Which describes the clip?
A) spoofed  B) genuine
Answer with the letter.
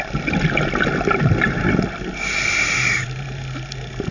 B